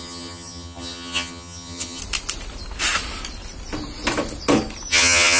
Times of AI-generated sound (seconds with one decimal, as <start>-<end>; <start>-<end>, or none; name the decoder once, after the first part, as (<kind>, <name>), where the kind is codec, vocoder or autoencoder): 0.0-2.0 (vocoder, HiFi-GAN); 4.9-5.4